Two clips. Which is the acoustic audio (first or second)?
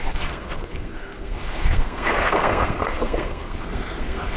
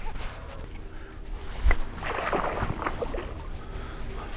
second